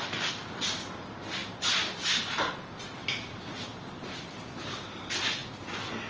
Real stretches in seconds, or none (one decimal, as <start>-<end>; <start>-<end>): 0.0-6.1